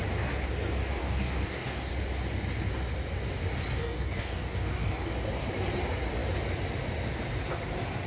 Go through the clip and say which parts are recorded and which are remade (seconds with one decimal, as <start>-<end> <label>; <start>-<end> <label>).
0.0-1.0 recorded; 1.0-1.9 remade; 1.9-3.8 recorded; 3.8-5.0 remade; 5.0-8.1 recorded